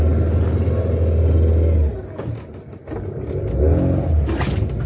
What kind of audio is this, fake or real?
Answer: real